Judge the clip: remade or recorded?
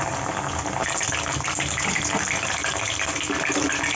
recorded